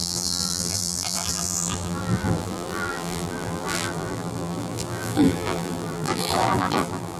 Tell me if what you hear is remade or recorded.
remade